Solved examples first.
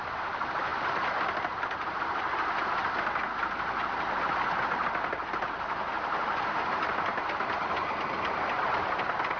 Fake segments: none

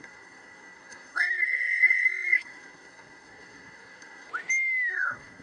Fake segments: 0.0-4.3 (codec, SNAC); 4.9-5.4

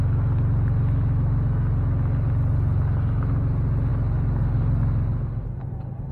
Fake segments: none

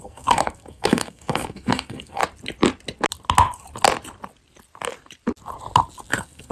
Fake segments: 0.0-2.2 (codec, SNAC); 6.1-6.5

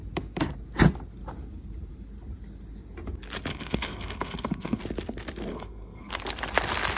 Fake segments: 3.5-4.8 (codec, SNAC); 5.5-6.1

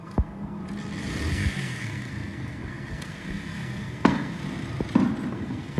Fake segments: 0.0-0.6 (codec, SNAC); 1.3-4.4; 5.3-5.8

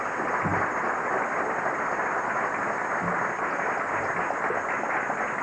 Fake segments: none

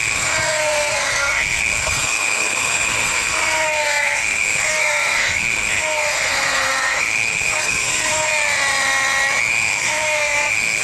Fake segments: 0.0-8.3 (codec, SNAC); 9.5-10.8